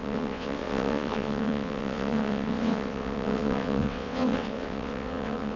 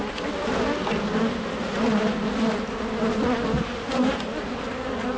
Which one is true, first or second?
second